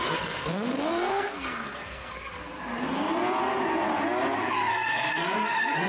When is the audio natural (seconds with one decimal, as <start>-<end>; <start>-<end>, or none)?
2.5-4.7